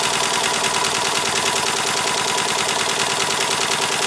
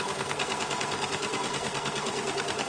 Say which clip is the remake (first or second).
second